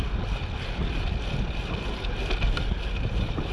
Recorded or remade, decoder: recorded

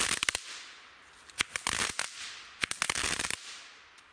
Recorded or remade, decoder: recorded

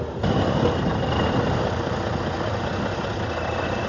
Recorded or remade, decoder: recorded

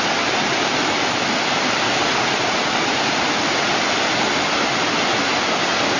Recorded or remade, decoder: recorded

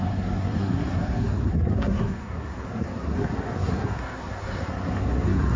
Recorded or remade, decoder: remade, codec, SNAC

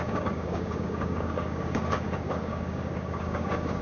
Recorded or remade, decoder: remade, codec, DAC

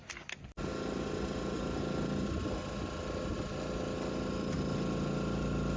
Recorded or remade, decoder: recorded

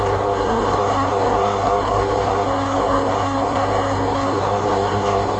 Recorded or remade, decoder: remade, codec, SNAC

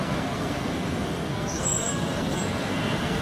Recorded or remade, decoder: remade, codec, SNAC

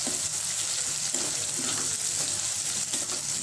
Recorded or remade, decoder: recorded